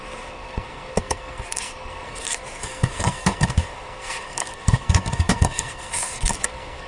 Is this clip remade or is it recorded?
remade